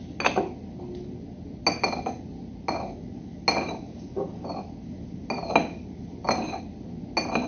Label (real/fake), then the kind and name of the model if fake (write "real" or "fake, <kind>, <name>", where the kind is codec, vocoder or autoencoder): real